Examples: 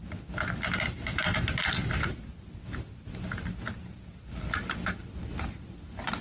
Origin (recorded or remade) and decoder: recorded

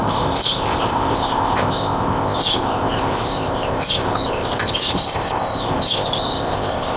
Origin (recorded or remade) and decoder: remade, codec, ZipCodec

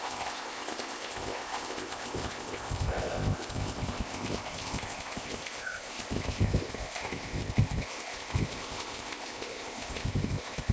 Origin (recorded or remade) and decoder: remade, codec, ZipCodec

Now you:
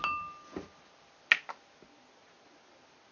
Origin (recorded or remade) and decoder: recorded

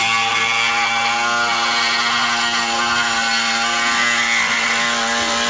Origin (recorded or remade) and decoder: recorded